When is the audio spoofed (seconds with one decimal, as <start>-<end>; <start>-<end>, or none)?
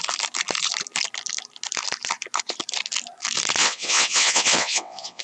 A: 3.6-5.2